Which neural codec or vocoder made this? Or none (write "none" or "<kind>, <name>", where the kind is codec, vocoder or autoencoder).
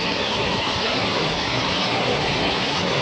codec, SNAC